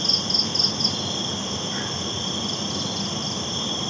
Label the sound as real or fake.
real